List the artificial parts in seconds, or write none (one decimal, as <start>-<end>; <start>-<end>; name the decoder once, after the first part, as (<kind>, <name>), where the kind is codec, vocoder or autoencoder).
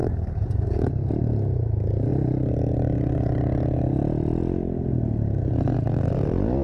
0.0-0.9 (codec, DAC)